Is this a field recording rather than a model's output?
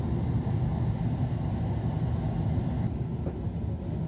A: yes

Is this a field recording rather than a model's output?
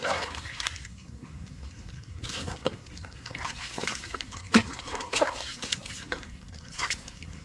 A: no